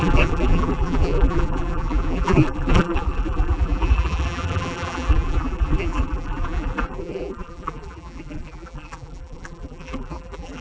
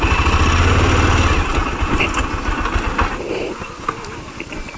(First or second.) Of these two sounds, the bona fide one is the second